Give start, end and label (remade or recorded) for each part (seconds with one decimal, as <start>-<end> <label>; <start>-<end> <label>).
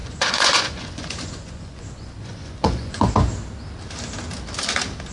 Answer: 0.0-3.1 remade; 3.1-5.1 recorded